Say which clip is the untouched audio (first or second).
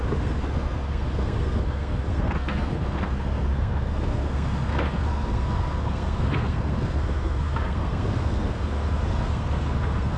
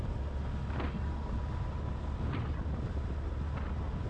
second